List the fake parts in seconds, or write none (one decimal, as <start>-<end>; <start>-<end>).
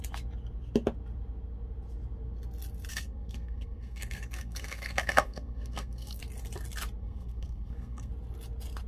2.9-6.2; 7.0-8.1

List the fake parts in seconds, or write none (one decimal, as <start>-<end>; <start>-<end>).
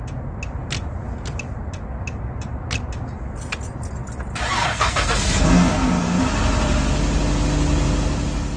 4.6-6.2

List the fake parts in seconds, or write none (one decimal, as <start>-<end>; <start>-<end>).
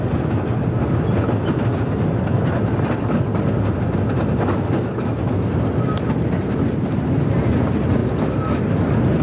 none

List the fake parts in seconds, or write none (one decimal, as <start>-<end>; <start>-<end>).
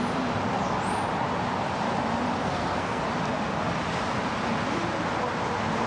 2.4-3.0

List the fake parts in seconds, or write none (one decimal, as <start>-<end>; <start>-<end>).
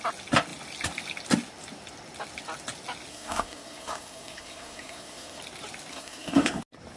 3.1-5.4; 5.9-6.6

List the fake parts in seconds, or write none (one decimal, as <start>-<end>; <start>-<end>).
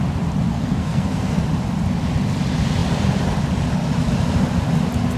0.5-1.4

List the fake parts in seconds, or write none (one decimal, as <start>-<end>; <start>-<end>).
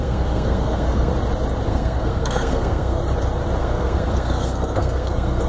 0.0-1.1; 1.7-3.0; 3.6-5.5